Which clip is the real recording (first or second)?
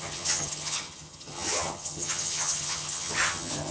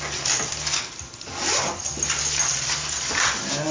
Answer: second